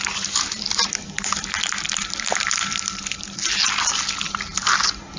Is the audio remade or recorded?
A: recorded